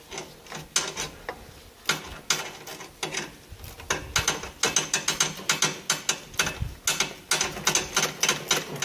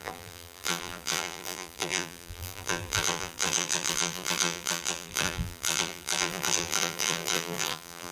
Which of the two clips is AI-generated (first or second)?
second